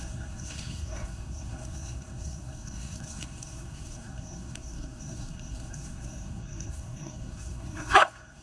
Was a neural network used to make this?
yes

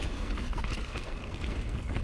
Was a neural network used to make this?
yes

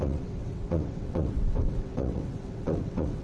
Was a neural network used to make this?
yes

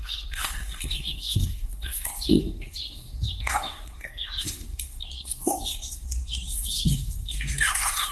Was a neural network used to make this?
yes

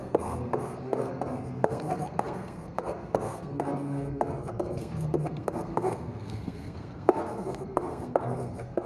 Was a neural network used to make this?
yes